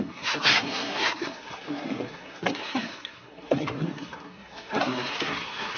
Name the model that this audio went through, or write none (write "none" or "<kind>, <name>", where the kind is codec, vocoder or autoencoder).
codec, SNAC